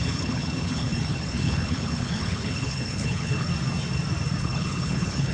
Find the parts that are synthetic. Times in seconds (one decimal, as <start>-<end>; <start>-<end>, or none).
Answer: 0.0-3.5; 4.4-5.3